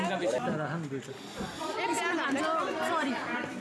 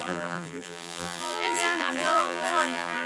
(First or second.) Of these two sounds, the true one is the first